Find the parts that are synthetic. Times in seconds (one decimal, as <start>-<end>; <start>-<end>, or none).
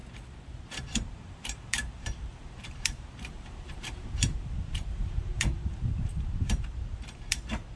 0.6-7.8